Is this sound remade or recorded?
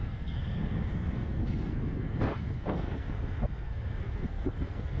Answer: remade